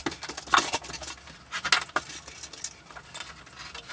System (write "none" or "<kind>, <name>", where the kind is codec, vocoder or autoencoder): none